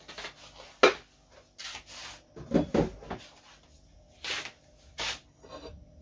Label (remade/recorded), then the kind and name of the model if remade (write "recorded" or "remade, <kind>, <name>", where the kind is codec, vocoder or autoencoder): recorded